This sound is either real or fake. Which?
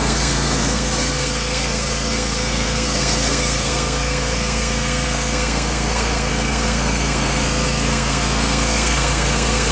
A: fake